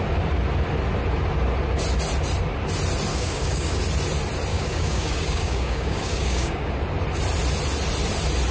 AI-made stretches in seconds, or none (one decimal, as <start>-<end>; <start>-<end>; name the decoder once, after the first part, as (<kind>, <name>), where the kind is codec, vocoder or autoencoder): 3.1-3.8 (codec, DAC); 4.5-6.7